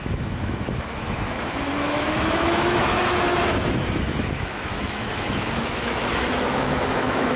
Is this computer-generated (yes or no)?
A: yes